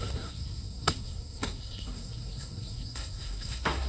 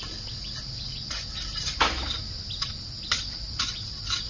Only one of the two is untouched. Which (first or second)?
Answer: second